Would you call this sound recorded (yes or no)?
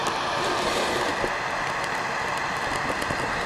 yes